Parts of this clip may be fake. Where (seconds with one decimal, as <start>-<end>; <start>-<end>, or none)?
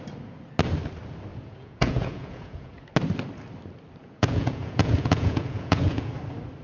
1.3-2.8; 4.0-6.1